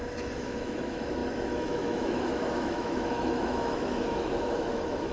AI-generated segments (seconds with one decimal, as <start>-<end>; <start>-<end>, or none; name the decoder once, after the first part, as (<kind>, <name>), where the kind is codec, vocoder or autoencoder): 0.0-5.1 (autoencoder, DAC-VAE)